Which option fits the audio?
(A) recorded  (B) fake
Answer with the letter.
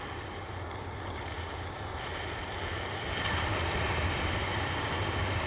A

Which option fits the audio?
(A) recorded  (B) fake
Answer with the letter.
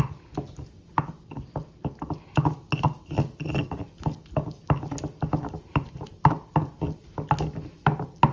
A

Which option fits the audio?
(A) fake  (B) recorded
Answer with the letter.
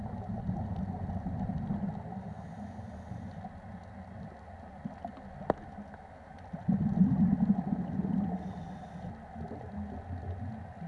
B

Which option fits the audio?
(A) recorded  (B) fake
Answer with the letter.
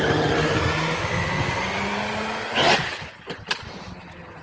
A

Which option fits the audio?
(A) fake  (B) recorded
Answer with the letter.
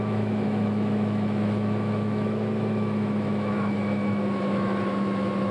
A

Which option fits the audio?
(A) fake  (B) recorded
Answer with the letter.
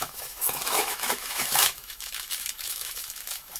A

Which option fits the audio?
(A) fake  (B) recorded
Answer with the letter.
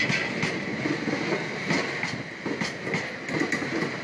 B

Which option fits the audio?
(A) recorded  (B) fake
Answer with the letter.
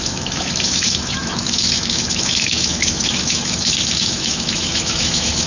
B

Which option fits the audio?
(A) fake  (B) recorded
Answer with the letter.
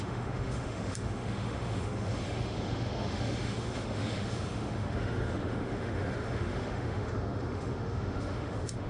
A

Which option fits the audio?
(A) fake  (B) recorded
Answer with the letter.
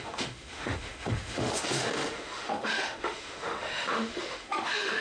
A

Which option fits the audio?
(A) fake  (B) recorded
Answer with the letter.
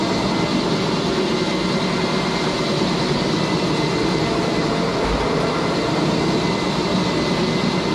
B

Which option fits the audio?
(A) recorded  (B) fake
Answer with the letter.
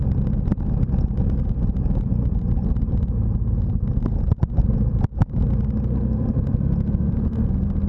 A